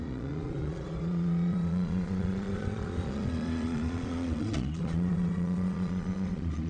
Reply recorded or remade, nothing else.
remade